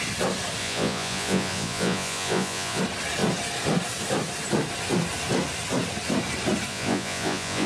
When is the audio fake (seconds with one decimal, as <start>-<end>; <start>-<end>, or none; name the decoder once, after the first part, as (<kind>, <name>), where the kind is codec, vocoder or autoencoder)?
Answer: 0.6-2.8 (vocoder, Vocos); 6.7-7.7